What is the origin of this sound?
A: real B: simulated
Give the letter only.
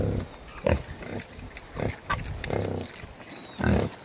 A